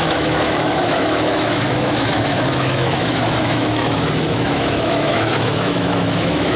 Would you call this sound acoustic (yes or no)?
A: no